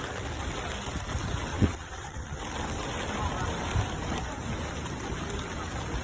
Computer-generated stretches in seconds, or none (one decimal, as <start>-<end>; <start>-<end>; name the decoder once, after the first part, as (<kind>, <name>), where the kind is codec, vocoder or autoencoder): 1.5-2.4 (vocoder, WaveNeXt)